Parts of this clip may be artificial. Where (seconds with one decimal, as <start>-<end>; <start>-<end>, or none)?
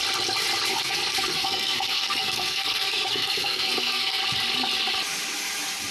0.7-4.2